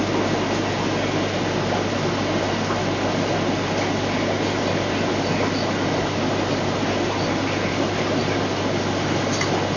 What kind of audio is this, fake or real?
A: real